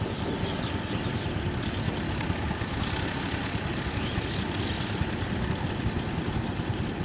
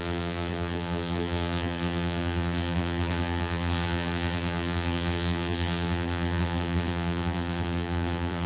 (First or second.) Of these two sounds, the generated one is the second